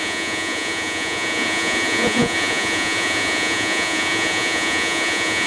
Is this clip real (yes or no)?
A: no